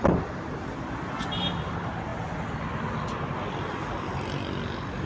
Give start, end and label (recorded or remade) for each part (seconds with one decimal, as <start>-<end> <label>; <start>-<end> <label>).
0.0-5.1 recorded